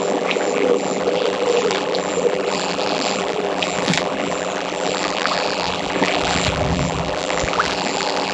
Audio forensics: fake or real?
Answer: fake